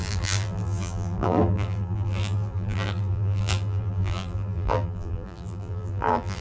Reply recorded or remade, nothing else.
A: remade